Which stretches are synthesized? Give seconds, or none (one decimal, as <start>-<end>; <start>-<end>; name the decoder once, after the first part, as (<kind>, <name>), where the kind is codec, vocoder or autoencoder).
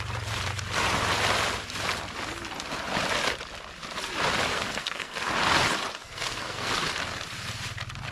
4.5-5.3 (codec, SNAC); 6.0-6.7